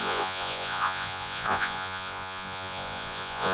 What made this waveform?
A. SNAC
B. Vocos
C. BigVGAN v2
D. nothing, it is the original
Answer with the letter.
B